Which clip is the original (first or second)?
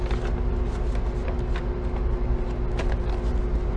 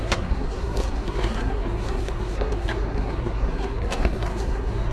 first